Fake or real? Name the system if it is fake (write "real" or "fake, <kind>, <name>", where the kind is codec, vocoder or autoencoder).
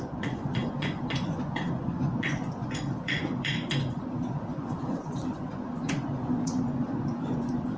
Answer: fake, vocoder, Vocos